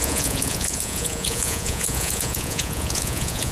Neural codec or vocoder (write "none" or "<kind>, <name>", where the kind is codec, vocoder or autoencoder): vocoder, Vocos